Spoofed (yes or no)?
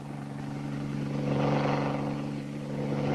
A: no